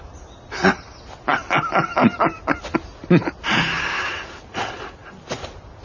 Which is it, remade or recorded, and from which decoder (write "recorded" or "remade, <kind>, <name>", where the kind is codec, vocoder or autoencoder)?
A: recorded